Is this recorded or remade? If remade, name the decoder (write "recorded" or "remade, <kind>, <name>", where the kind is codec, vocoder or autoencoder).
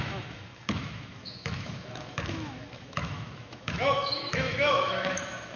remade, autoencoder, DAC-VAE